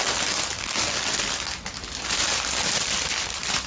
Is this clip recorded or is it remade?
recorded